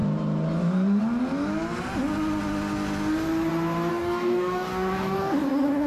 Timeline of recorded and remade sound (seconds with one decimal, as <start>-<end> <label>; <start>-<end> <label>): 0.0-3.9 recorded; 3.9-5.9 remade